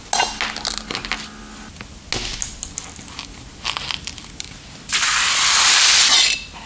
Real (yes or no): yes